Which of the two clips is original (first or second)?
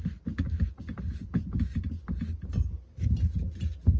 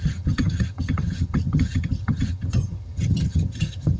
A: first